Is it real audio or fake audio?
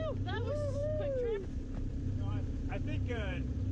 fake